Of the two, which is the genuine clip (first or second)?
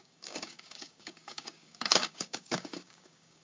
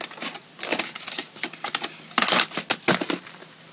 second